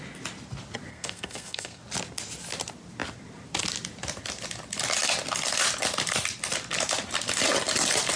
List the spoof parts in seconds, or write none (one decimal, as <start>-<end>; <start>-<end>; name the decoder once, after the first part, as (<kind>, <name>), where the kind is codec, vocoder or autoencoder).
0.9-1.8 (codec, SNAC)